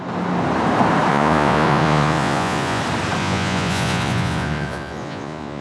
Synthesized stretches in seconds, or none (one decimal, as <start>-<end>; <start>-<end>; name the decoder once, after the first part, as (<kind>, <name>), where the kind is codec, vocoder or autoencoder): 1.1-2.8 (vocoder, Vocos); 3.2-5.6